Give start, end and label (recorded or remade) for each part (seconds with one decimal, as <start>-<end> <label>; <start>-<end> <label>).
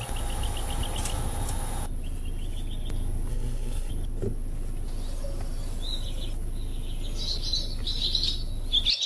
0.0-3.3 recorded; 3.3-3.9 remade; 3.9-9.1 recorded